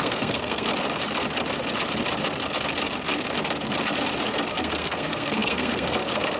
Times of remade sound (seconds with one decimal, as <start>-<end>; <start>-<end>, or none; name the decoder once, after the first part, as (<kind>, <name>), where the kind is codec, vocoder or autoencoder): 0.0-0.7 (codec, SNAC); 4.5-6.4